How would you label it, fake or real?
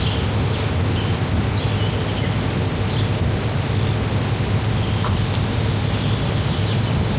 real